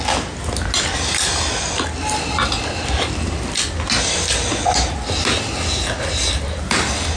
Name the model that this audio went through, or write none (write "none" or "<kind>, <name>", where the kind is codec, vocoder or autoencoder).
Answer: none